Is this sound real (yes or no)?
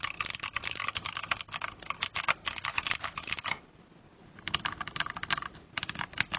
yes